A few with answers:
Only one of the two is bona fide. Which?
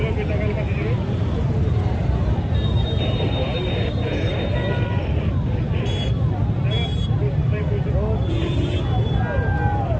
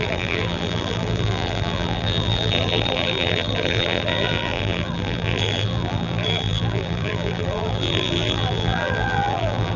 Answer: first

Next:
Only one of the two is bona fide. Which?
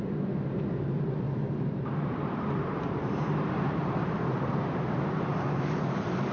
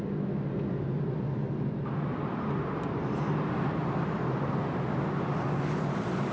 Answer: second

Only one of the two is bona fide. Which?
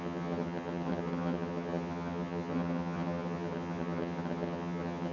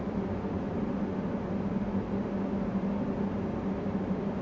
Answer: second